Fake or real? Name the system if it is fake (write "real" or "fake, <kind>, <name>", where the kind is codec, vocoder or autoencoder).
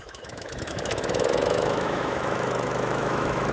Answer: fake, autoencoder, DAC-VAE